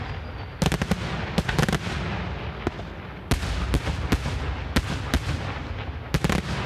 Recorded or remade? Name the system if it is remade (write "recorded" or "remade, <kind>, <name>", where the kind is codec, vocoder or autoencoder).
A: recorded